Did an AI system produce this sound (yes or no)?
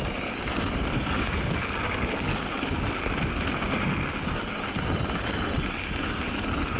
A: no